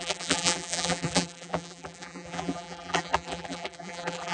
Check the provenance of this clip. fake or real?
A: fake